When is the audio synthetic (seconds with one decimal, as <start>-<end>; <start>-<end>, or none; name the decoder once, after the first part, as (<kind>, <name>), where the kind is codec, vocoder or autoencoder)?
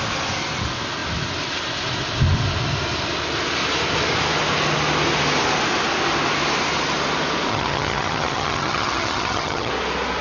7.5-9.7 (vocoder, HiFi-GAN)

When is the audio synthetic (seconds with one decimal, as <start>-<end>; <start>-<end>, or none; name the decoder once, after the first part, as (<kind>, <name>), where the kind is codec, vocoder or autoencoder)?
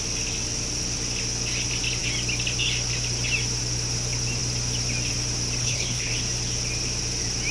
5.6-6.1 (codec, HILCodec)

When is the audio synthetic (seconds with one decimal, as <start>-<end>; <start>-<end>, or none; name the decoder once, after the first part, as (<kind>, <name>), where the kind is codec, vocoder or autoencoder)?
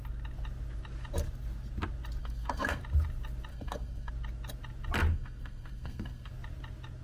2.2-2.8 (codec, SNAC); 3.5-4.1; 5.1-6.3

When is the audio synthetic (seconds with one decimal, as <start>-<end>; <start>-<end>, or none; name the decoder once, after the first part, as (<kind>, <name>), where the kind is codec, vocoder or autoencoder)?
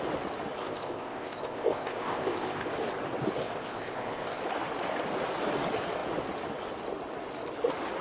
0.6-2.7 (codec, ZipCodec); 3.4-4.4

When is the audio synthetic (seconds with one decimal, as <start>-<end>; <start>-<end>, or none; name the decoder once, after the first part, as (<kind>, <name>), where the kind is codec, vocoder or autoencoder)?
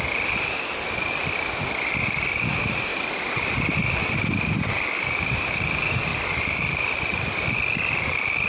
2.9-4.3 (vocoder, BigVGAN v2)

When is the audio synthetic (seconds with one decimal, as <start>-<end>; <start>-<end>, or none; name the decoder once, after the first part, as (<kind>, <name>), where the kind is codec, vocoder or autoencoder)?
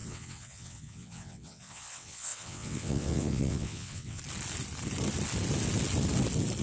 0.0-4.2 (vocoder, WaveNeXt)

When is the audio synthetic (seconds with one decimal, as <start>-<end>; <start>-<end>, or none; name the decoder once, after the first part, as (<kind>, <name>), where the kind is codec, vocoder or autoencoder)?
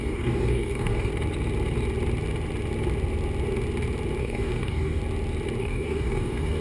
0.0-1.1 (codec, DAC); 4.2-5.0; 5.6-6.6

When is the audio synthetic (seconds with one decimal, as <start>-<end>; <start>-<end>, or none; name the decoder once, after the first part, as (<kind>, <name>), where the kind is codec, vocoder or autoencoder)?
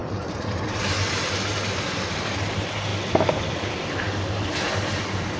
0.0-0.8 (vocoder, BigVGAN v2); 2.9-4.3